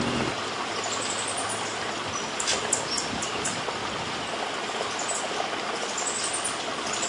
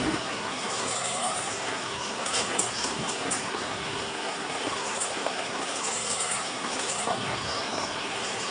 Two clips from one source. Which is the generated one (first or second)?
second